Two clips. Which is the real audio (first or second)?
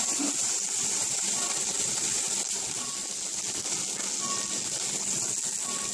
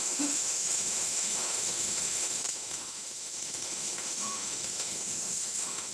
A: first